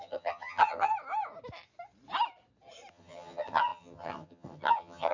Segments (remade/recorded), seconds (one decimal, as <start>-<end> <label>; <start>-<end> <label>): 0.0-0.9 remade; 0.9-2.9 recorded; 2.9-5.1 remade